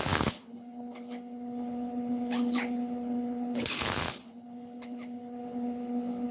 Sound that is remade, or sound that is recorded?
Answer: remade